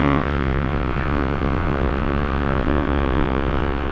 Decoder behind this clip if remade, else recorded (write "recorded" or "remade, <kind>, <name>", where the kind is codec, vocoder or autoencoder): remade, vocoder, WaveNeXt